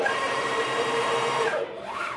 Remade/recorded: remade